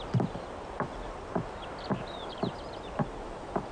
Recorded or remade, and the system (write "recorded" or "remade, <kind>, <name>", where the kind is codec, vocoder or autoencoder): recorded